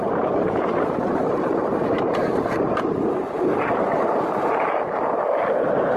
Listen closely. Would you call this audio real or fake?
fake